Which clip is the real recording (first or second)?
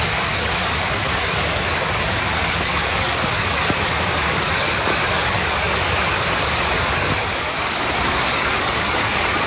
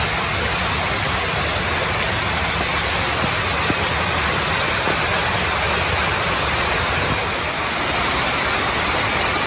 second